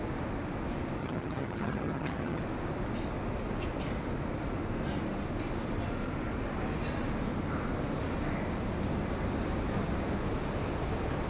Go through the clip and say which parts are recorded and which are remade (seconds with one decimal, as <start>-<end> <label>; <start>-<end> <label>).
0.0-1.0 recorded; 1.0-2.4 remade; 2.4-11.3 recorded